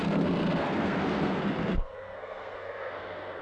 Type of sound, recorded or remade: remade